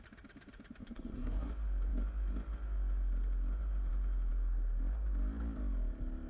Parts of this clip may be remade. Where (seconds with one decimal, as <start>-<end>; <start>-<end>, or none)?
0.8-1.5